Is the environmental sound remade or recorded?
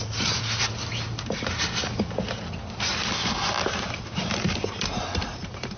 recorded